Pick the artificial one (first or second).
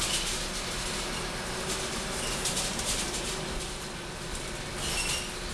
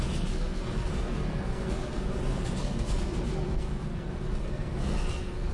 second